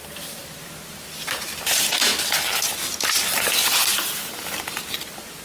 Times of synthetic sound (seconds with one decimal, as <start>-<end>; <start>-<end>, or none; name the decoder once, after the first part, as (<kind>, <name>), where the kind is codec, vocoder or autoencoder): 0.0-0.4 (vocoder, BigVGAN v2); 0.9-2.1; 4.3-5.4